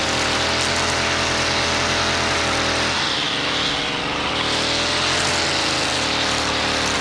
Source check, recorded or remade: recorded